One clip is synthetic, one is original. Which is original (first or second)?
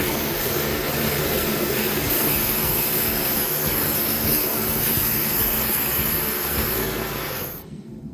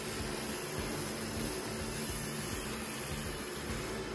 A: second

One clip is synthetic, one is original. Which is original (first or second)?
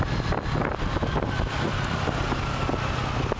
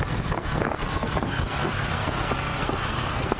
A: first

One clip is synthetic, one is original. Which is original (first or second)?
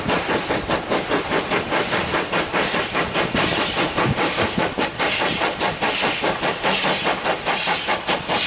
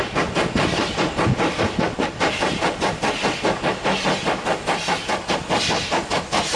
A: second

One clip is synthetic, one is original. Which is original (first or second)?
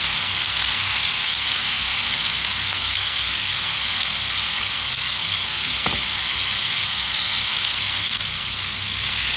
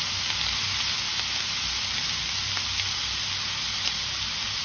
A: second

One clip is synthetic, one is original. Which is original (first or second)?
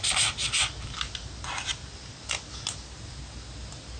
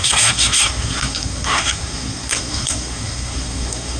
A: first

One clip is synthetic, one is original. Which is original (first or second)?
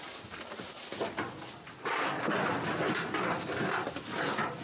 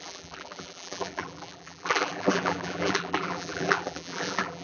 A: first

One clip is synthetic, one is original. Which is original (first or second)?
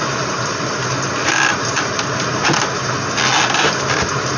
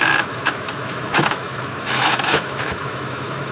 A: first